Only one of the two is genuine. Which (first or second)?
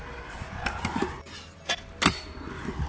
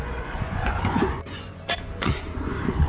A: first